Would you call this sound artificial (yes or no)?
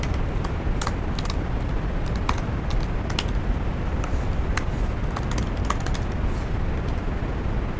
no